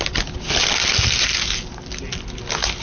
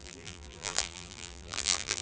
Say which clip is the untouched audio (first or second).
first